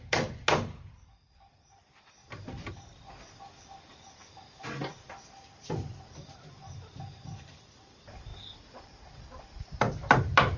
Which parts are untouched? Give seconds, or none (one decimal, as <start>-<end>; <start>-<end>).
2.2-2.7